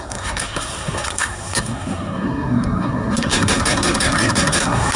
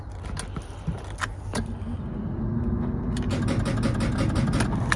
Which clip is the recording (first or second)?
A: second